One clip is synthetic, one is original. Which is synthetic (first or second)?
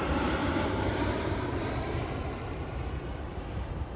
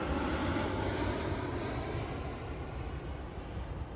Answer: first